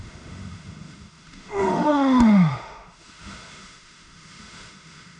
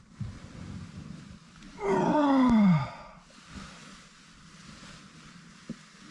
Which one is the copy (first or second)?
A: first